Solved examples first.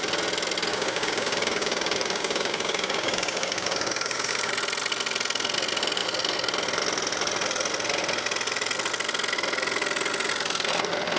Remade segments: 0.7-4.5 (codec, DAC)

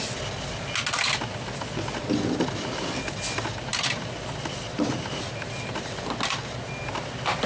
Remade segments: 3.7-5.9 (vocoder, BigVGAN v2)

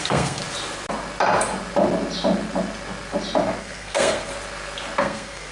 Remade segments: 0.0-0.4 (codec, SNAC); 3.6-4.3; 5.0-5.5

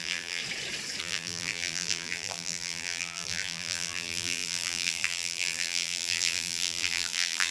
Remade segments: 0.0-0.4 (vocoder, BigVGAN v2); 1.0-7.5